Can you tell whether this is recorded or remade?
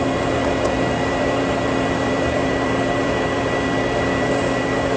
remade